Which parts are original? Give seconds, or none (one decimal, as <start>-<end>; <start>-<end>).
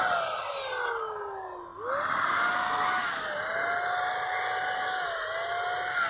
0.0-6.1